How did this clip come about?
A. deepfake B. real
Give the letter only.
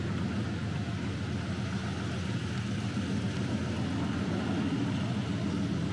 B